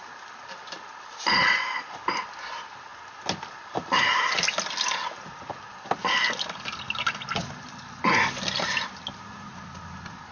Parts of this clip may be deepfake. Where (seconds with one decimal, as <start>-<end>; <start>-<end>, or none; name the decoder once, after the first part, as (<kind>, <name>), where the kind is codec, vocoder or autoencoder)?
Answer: none